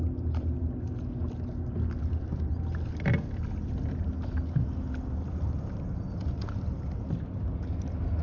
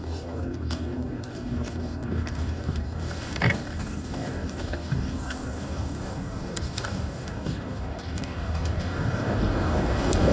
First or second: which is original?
first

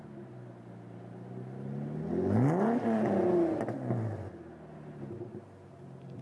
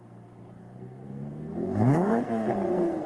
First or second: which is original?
first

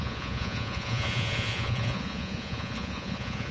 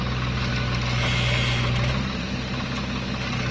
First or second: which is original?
second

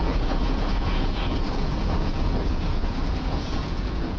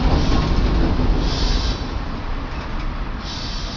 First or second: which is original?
second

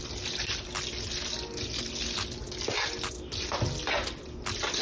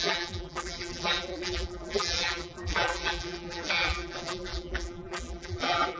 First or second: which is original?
first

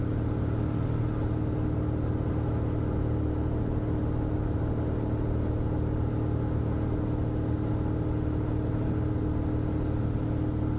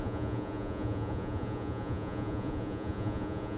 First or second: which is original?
first